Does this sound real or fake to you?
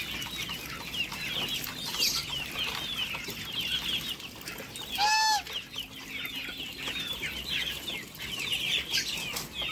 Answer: real